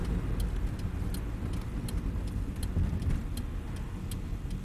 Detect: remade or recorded recorded